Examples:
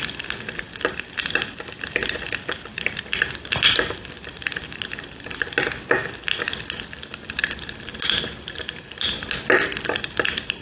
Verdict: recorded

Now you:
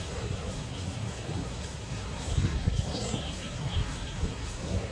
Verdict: remade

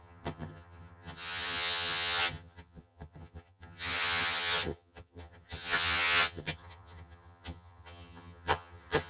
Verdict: remade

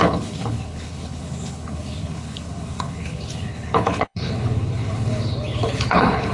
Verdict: remade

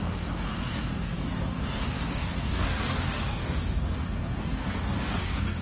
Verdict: remade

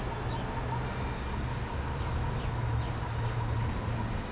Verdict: recorded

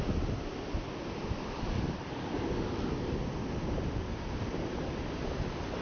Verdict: recorded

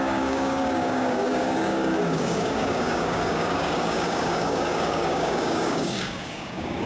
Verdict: remade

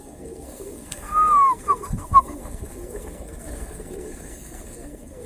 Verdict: remade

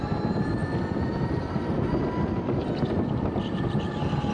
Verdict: recorded